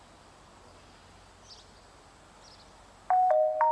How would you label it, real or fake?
real